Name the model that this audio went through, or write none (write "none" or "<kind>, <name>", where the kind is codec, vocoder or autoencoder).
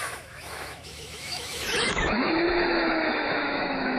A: autoencoder, DAC-VAE